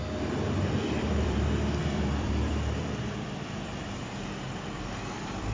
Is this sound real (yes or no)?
no